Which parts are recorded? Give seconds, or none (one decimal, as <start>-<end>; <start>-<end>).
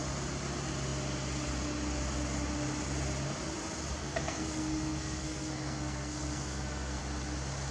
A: 0.0-4.0; 7.0-7.7